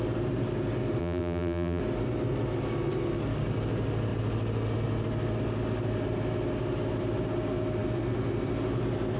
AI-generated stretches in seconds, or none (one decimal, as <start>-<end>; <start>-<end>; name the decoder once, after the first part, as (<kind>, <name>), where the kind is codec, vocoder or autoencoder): 1.0-1.8 (vocoder, BigVGAN v2)